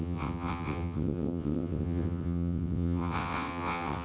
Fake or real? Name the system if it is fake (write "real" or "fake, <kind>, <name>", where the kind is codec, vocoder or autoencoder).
fake, vocoder, WaveNeXt